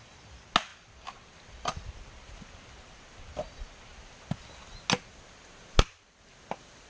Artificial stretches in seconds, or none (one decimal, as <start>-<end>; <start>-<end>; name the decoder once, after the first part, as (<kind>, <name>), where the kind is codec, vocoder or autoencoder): none